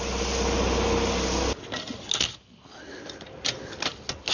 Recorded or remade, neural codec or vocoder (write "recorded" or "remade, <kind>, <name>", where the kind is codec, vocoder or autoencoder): recorded